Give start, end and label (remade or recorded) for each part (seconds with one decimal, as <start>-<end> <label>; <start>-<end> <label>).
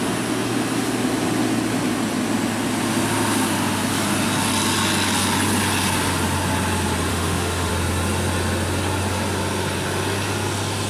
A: 0.0-7.1 recorded; 7.1-7.7 remade; 7.7-10.9 recorded